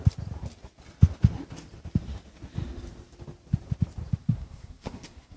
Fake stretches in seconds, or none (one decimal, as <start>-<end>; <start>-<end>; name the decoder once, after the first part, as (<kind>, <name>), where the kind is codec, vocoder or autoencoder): 4.2-5.4 (codec, SNAC)

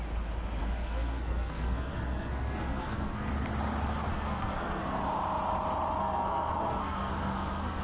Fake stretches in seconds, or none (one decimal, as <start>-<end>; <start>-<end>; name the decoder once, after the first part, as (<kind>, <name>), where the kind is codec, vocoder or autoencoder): 0.6-3.3 (codec, SNAC); 4.1-5.0; 6.0-7.8

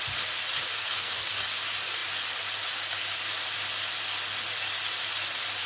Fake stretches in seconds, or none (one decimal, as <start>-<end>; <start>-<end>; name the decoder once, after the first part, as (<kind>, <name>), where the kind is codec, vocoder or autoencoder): 0.8-1.3 (codec, SNAC)

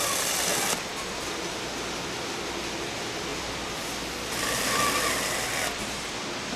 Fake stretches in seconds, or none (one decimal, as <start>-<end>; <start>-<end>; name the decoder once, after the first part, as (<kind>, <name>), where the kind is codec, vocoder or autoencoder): none

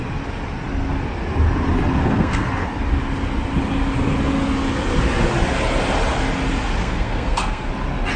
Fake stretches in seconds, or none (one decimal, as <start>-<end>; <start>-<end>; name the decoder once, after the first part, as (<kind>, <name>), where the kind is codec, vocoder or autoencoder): 2.0-2.5 (codec, SNAC); 6.8-7.7